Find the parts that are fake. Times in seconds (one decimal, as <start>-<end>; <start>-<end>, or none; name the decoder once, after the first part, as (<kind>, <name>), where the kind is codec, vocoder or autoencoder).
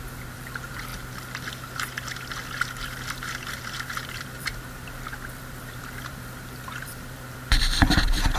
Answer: 0.0-0.9 (vocoder, BigVGAN v2); 3.5-8.4